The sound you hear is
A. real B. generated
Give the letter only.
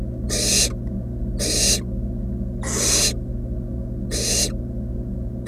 A